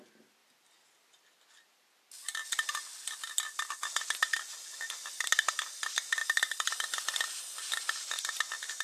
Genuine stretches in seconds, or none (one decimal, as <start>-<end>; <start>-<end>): 0.0-8.8